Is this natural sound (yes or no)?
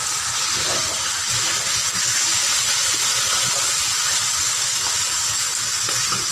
yes